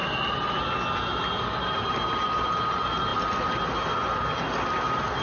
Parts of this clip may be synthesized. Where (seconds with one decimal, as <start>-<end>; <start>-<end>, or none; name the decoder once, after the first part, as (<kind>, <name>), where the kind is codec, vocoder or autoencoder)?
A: none